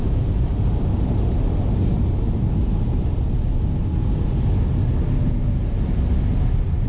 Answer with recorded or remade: recorded